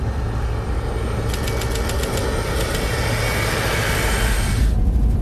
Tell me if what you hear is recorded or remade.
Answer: recorded